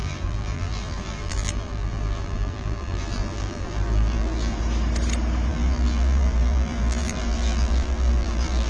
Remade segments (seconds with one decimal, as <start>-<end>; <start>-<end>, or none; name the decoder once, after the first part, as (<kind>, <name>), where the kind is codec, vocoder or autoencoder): 0.0-4.6 (vocoder, BigVGAN v2); 5.5-8.7